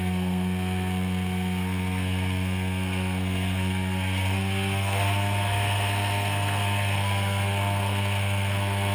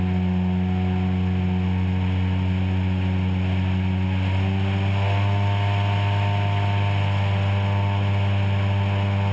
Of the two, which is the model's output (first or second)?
first